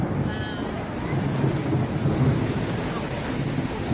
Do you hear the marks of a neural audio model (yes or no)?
no